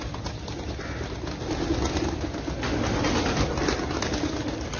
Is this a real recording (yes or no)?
yes